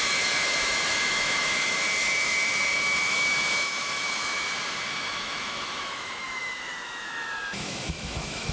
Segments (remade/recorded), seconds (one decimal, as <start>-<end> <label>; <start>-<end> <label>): 0.0-8.5 remade